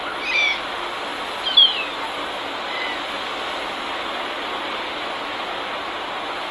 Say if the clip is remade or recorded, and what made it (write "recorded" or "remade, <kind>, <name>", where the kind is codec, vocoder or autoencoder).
recorded